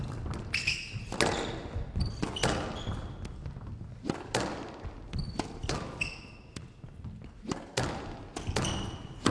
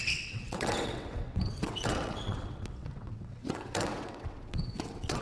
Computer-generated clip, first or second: second